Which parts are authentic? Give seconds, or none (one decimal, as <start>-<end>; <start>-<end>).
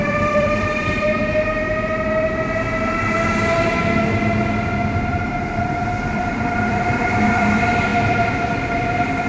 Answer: 1.2-6.0